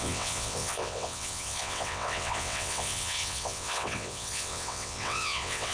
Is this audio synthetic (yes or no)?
yes